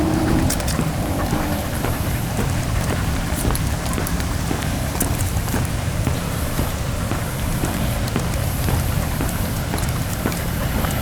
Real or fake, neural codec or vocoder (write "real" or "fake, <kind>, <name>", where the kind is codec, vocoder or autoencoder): fake, vocoder, BigVGAN v2